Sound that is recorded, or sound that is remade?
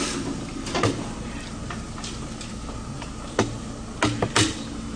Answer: recorded